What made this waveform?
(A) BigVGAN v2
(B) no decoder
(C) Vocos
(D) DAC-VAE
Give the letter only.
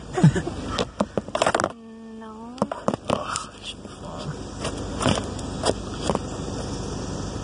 B